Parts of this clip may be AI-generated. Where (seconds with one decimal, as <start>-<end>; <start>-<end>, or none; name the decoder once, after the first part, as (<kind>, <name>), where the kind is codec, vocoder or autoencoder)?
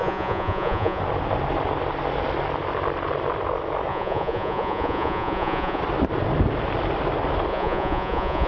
0.0-1.0 (vocoder, Vocos); 3.9-5.8; 7.5-8.5